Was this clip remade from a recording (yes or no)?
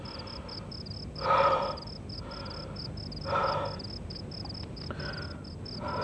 no